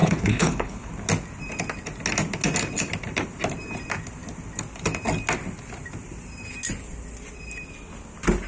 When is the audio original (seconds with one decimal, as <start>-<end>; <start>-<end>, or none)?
0.9-8.5